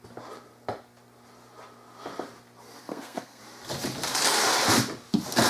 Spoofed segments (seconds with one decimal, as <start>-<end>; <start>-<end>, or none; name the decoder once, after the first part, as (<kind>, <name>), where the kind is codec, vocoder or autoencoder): 2.8-3.4 (codec, SNAC)